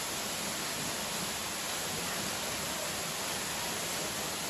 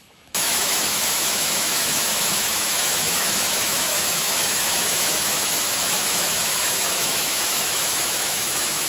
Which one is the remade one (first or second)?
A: second